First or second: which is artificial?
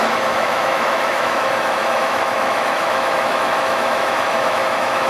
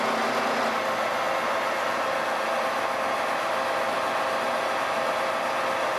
first